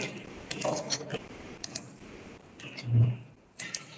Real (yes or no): no